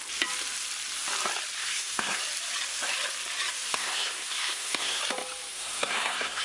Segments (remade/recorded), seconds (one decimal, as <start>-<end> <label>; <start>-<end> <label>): 0.0-1.6 recorded; 1.6-2.2 remade; 2.2-3.7 recorded; 3.7-5.0 remade; 5.0-5.5 recorded; 5.5-6.4 remade